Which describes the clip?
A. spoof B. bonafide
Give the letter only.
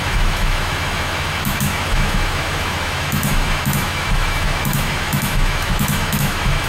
A